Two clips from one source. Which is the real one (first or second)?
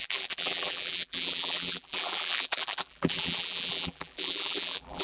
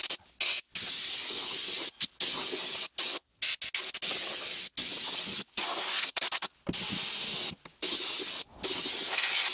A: second